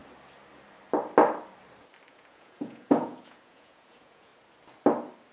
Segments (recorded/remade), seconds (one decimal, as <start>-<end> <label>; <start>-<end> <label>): 0.0-2.1 recorded; 2.1-4.3 remade; 4.3-5.3 recorded